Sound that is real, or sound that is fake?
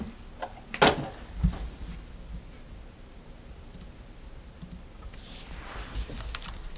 real